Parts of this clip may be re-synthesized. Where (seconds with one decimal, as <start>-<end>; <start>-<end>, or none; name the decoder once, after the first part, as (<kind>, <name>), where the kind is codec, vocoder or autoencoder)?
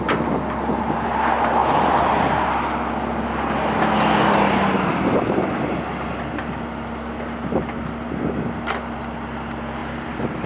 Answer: 1.6-2.3 (vocoder, BigVGAN v2); 9.8-10.5